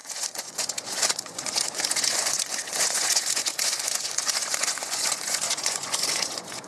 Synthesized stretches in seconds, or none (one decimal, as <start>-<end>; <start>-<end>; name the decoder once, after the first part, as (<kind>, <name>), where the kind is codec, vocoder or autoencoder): 0.0-6.7 (vocoder, Vocos)